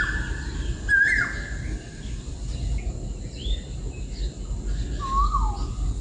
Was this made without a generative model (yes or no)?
yes